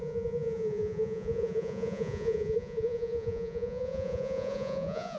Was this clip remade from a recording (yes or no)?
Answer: yes